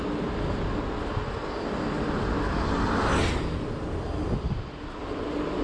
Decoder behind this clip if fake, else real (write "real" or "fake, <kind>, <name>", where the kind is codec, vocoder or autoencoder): real